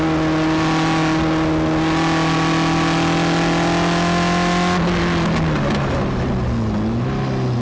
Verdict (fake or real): real